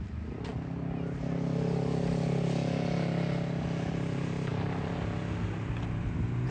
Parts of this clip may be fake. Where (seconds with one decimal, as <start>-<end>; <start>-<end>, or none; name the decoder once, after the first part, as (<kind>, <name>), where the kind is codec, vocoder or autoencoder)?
none